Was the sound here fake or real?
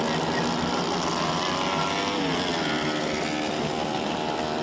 real